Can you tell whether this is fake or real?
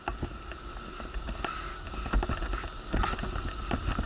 real